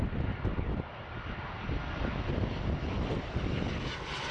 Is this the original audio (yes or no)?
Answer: yes